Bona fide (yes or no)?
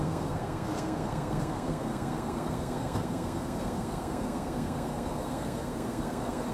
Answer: no